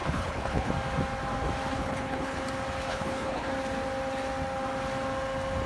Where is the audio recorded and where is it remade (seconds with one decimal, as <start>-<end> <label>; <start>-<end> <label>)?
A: 0.0-0.7 remade; 0.7-1.7 recorded; 1.7-2.4 remade; 2.4-2.9 recorded; 2.9-3.5 remade; 3.5-5.7 recorded